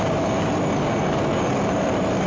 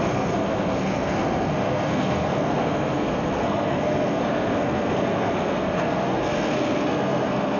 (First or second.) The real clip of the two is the first